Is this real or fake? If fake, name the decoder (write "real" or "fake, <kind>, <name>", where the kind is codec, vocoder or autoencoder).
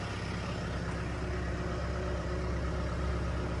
real